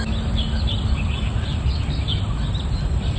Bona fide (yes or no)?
no